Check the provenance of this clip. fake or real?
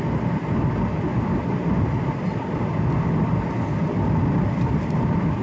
real